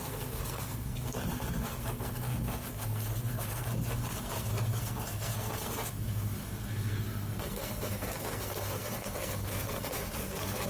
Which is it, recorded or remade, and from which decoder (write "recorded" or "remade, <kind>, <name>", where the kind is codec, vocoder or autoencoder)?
remade, codec, SNAC